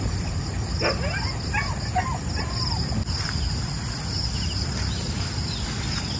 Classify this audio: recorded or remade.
recorded